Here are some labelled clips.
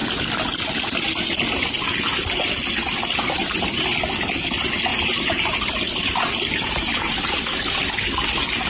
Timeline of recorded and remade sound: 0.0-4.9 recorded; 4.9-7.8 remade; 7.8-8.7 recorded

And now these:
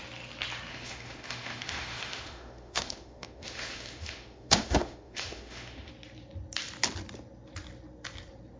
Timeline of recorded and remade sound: 0.0-0.7 recorded; 0.7-5.9 remade; 5.9-8.6 recorded

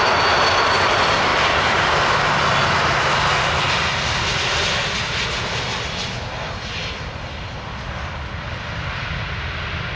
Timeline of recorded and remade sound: 0.0-1.3 recorded; 1.3-2.0 remade; 2.0-10.0 recorded

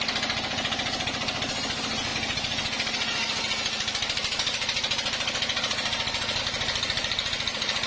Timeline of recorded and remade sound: 0.0-7.9 recorded

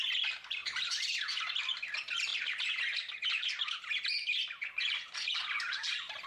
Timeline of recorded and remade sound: 0.0-6.3 recorded

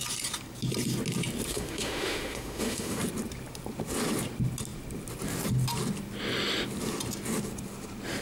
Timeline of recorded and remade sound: 0.0-1.5 recorded; 1.5-3.0 remade; 3.0-8.2 recorded

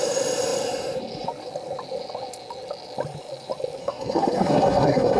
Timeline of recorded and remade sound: 0.0-3.8 recorded; 3.8-5.2 remade